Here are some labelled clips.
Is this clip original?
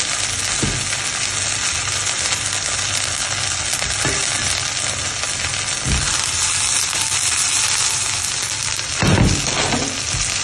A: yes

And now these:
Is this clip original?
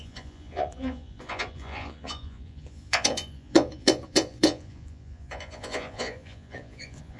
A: no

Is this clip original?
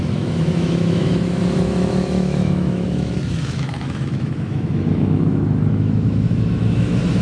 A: no